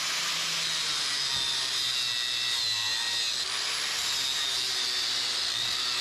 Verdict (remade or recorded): recorded